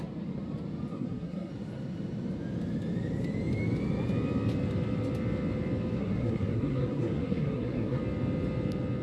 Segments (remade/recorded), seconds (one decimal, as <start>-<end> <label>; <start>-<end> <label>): 0.0-0.9 recorded; 0.9-1.5 remade; 1.5-6.0 recorded; 6.0-8.0 remade; 8.0-9.0 recorded

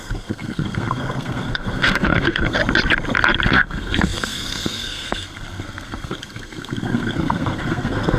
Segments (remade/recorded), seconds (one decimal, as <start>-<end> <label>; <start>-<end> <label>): 0.0-2.6 remade; 2.6-3.5 recorded; 3.5-8.2 remade

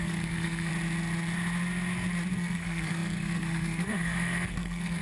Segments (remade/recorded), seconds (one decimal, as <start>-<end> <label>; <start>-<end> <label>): 0.0-0.7 remade; 0.7-2.3 recorded; 2.3-5.0 remade

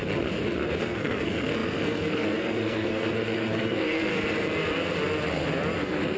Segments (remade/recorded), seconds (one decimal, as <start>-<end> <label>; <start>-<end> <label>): 0.0-0.8 recorded; 0.8-4.1 remade; 4.1-5.8 recorded; 5.8-6.2 remade

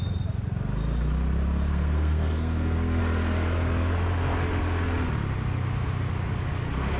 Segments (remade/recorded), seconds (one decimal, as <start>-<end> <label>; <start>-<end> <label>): 0.0-1.7 recorded; 1.7-3.0 remade; 3.0-7.0 recorded

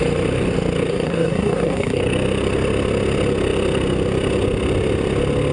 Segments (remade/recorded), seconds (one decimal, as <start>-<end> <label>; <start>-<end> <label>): 0.0-0.9 recorded; 0.9-2.0 remade; 2.0-5.5 recorded